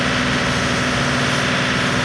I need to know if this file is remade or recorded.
recorded